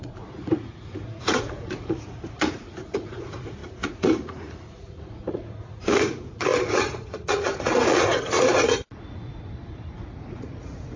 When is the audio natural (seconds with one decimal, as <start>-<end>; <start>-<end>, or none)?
none